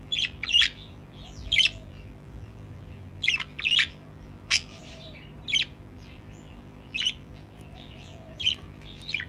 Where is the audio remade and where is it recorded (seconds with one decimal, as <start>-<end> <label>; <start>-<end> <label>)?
0.0-4.8 remade; 4.8-5.7 recorded; 5.7-9.3 remade

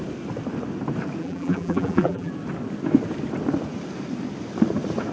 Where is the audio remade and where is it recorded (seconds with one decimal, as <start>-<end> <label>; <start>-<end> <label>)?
0.0-1.2 recorded; 1.2-2.3 remade; 2.3-5.1 recorded

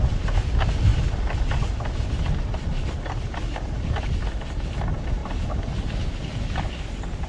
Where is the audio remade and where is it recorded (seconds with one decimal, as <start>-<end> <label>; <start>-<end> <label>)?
0.0-7.3 recorded

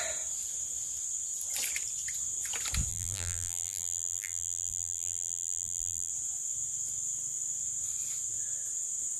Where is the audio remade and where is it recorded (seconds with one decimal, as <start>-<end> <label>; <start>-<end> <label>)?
0.0-2.9 recorded; 2.9-6.1 remade; 6.1-9.2 recorded

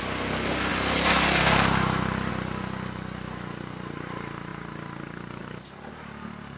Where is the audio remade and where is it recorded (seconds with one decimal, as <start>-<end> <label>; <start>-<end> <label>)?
0.0-0.7 recorded; 0.7-2.3 remade; 2.3-6.6 recorded

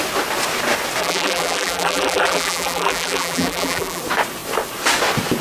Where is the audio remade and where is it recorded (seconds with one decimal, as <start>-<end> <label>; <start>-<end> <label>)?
0.0-1.0 recorded; 1.0-4.0 remade; 4.0-5.4 recorded

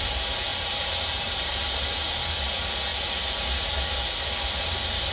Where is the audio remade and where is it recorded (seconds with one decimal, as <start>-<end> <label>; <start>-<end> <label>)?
0.0-0.5 recorded; 0.5-2.4 remade; 2.4-5.1 recorded

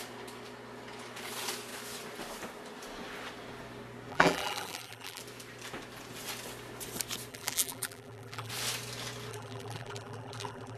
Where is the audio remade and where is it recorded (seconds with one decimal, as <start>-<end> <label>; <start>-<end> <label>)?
0.0-4.1 recorded; 4.1-5.2 remade; 5.2-7.3 recorded; 7.3-8.5 remade; 8.5-9.3 recorded; 9.3-10.8 remade